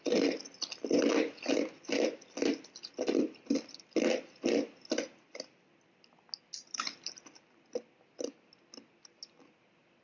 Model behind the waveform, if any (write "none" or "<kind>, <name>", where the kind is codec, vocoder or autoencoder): none